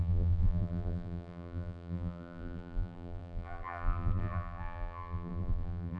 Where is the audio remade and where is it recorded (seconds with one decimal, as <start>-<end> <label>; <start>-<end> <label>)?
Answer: 0.0-6.0 remade